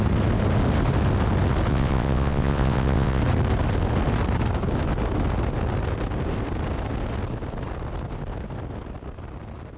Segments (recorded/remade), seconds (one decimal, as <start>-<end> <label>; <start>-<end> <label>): 0.0-1.7 recorded; 1.7-3.2 remade; 3.2-9.8 recorded